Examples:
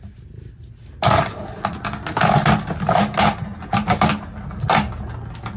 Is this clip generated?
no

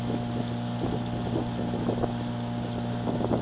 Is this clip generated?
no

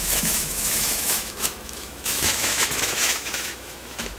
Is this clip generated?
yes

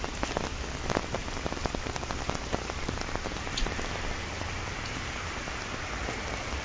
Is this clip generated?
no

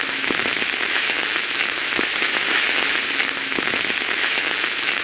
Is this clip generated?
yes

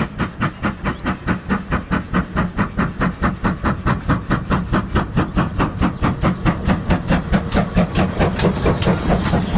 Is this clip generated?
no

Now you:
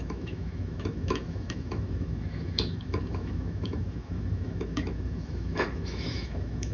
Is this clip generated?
yes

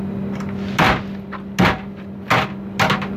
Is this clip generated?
no